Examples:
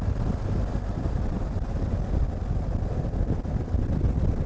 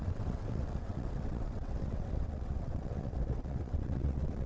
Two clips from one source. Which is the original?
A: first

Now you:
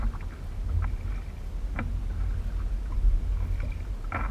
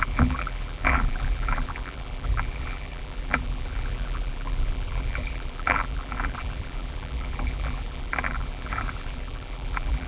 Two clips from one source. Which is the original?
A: first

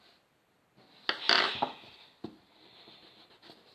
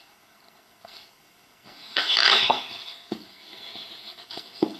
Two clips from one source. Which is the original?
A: first